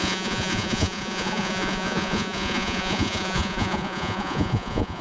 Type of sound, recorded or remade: remade